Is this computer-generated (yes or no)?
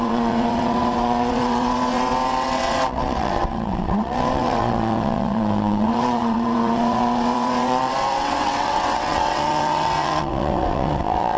yes